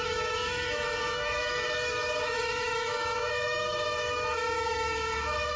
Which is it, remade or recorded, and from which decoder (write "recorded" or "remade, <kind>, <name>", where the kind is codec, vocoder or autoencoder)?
remade, autoencoder, DAC-VAE